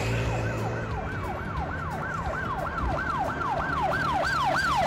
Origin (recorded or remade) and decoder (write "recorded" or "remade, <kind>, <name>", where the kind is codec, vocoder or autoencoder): remade, vocoder, BigVGAN v2